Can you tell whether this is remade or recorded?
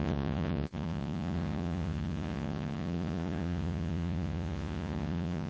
remade